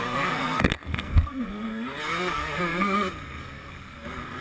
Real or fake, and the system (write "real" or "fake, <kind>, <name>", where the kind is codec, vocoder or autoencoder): fake, codec, SNAC